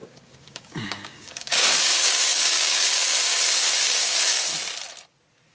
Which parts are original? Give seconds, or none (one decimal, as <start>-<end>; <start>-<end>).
4.5-5.5

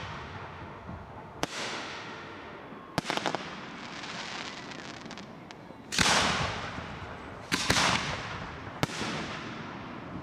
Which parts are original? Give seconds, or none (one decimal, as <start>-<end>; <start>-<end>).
2.6-10.2

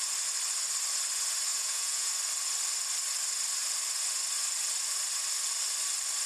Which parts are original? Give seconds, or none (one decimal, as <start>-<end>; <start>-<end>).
0.0-1.5; 2.1-6.3

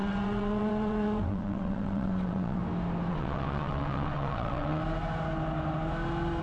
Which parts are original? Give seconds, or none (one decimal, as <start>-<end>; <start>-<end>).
2.6-3.1; 4.8-6.4

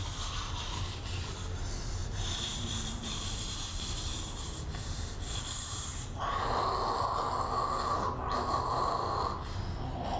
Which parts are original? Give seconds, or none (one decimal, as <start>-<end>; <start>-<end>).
0.0-2.0; 6.4-10.2

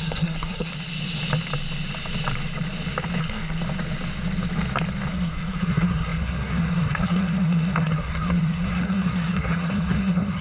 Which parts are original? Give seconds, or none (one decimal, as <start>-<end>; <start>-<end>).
0.7-3.2; 3.6-5.1